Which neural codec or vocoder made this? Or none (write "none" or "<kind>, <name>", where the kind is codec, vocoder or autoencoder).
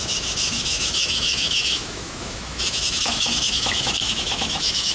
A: autoencoder, DAC-VAE